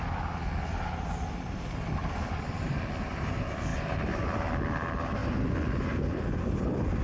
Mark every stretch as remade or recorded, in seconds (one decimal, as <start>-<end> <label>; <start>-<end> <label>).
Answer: 0.0-7.0 recorded